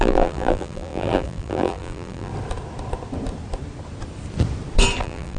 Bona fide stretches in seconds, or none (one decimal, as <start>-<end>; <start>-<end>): 2.3-5.0